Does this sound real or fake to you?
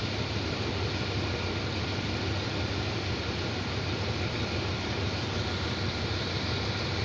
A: fake